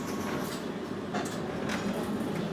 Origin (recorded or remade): recorded